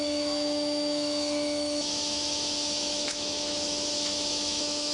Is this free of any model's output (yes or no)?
no